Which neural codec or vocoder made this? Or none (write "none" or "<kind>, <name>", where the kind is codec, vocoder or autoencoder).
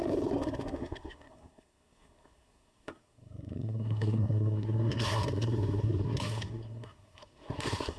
codec, SNAC